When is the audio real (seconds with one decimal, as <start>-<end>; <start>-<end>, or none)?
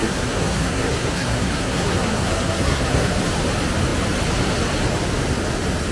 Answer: 3.2-5.9